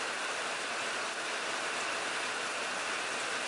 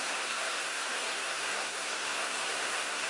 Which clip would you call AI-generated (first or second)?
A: second